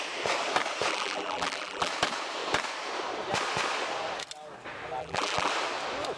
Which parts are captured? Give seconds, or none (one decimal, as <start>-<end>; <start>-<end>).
0.0-0.9; 1.9-5.0; 5.5-6.2